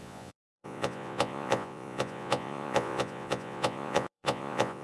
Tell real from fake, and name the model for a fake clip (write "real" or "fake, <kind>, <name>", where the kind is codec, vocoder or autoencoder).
fake, vocoder, Vocos